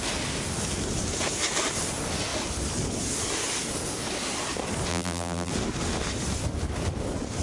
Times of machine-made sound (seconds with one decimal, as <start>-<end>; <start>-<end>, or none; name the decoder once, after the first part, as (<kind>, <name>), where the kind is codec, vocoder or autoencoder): 4.9-5.5 (vocoder, BigVGAN v2)